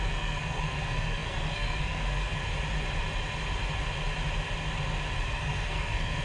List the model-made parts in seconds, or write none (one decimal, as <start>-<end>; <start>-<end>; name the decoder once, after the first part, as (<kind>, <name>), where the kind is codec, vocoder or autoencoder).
0.0-2.4 (codec, SNAC); 5.2-6.2